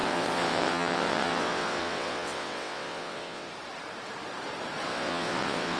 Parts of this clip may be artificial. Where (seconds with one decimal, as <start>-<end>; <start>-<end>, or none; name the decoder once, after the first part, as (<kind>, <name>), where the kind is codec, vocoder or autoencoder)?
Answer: 0.0-3.5 (vocoder, WaveNeXt); 4.9-5.8